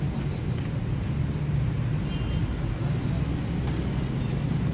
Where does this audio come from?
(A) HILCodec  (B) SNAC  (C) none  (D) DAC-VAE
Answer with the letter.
C